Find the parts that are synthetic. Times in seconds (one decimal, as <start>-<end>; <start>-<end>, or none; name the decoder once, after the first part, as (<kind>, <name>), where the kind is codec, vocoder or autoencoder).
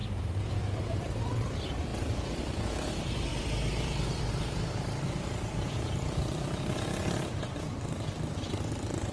0.6-9.1 (vocoder, BigVGAN v2)